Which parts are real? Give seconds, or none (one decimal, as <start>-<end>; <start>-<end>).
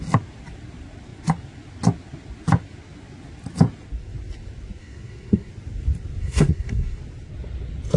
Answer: 0.0-4.8; 5.5-6.2; 7.0-8.0